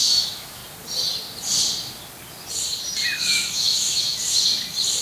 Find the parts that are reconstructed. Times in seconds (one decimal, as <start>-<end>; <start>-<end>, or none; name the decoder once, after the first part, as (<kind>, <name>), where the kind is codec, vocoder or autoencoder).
0.0-0.6 (autoencoder, DAC-VAE); 3.2-4.2